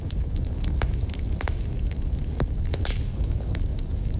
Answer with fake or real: fake